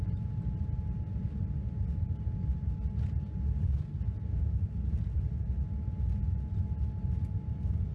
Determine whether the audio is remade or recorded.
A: recorded